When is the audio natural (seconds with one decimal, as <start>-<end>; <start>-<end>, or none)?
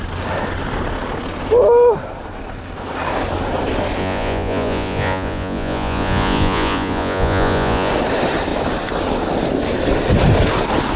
0.0-4.0; 7.9-11.0